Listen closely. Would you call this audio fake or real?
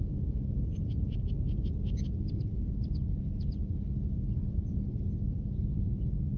real